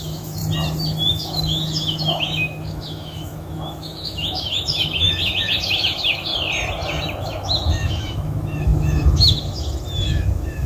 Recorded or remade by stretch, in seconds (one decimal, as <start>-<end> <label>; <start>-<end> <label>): 0.0-0.4 remade; 0.4-1.1 recorded; 1.1-6.3 remade; 6.3-7.2 recorded; 7.2-10.7 remade